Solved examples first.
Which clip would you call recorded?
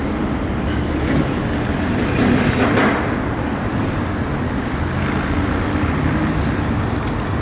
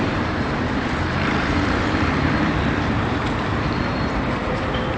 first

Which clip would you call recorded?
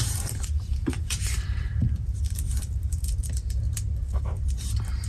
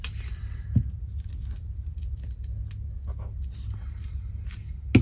second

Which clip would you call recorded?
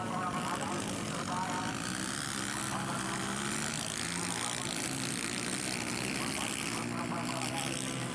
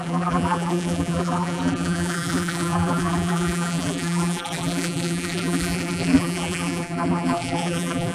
first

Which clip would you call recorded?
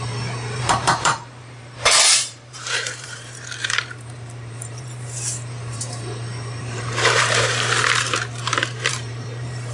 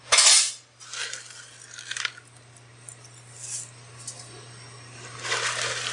second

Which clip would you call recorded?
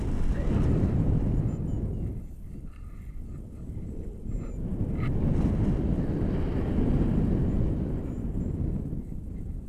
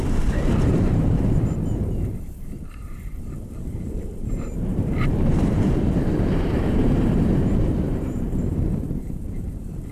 first